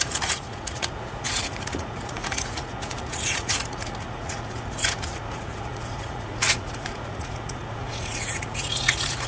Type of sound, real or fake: fake